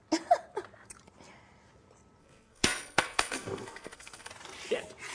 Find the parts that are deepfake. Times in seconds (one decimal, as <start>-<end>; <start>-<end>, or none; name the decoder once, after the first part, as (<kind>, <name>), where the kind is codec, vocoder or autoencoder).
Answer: 2.2-4.3 (codec, SNAC)